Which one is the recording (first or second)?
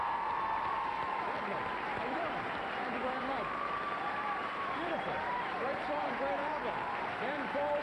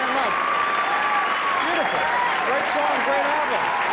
second